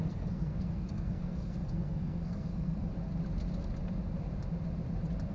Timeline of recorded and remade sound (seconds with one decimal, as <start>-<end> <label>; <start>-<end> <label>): 0.0-2.9 remade; 2.9-5.3 recorded